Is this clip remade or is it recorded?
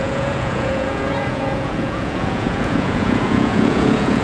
remade